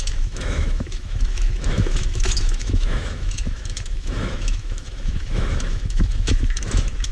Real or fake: fake